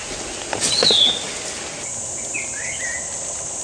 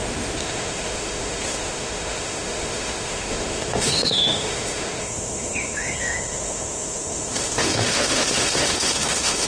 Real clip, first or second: first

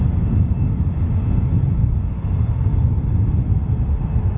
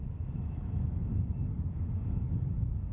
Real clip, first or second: first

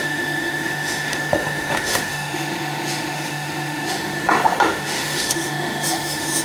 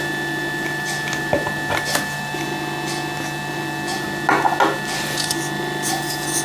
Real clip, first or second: second